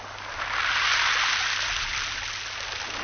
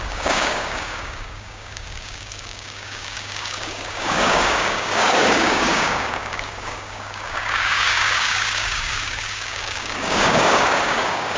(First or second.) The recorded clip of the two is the first